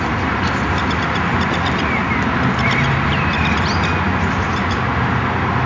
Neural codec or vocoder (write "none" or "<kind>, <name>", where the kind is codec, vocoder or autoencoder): none